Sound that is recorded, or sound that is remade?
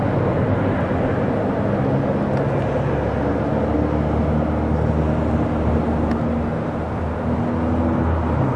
recorded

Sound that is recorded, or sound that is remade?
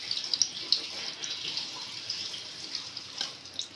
recorded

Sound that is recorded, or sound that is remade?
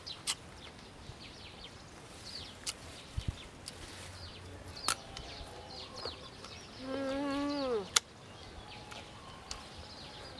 recorded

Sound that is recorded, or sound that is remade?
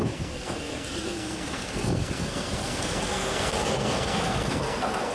remade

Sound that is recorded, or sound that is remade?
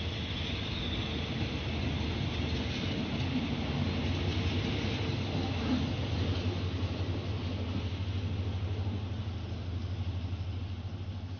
recorded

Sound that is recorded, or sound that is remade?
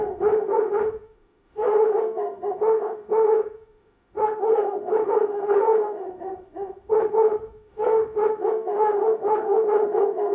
remade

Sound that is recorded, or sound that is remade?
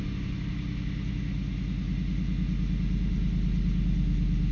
recorded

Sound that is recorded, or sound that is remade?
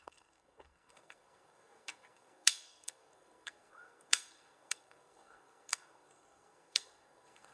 remade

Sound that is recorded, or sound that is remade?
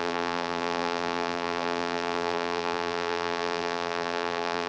remade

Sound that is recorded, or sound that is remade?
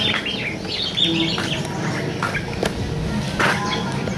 recorded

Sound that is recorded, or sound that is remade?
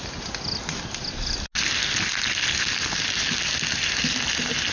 recorded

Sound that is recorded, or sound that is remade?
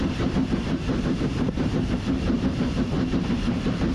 remade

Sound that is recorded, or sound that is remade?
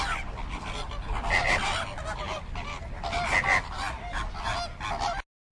recorded